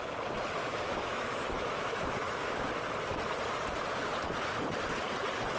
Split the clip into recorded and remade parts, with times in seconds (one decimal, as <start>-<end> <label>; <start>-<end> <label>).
0.0-0.6 recorded; 0.6-2.7 remade; 2.7-5.6 recorded